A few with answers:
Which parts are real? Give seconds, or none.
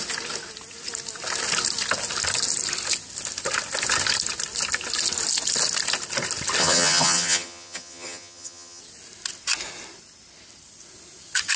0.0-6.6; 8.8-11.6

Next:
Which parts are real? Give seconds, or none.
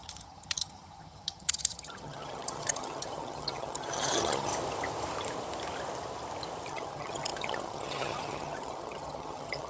4.5-6.7